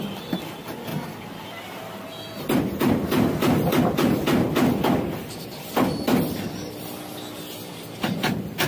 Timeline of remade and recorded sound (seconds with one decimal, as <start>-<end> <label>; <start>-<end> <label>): 0.0-8.7 recorded